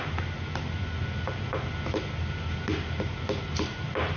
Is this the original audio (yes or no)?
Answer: yes